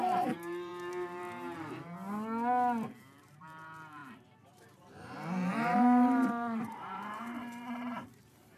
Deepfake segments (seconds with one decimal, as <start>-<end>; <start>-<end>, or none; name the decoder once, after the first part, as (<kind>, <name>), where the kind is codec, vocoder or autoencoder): 0.0-0.7 (vocoder, BigVGAN v2); 3.2-8.6